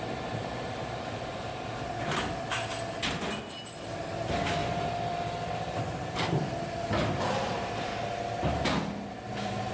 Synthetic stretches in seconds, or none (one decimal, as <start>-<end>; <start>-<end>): 0.0-1.5; 3.8-4.6; 6.1-7.9; 9.1-9.7